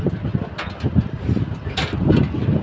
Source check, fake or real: real